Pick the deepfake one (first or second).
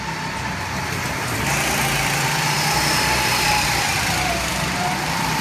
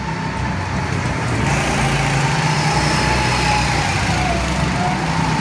first